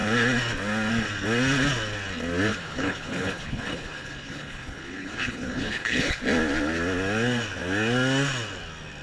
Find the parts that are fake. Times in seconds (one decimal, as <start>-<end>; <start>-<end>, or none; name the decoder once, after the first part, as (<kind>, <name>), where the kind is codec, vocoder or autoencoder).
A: 2.5-6.2 (codec, HILCodec)